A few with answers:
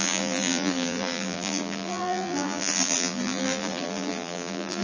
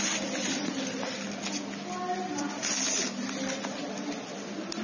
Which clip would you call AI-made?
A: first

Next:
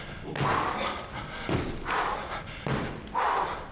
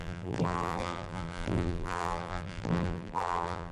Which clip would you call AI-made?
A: second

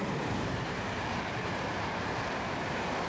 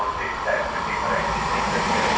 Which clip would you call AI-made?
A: first